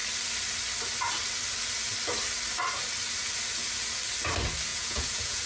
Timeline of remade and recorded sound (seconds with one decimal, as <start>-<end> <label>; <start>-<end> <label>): 0.0-4.7 recorded; 4.7-5.5 remade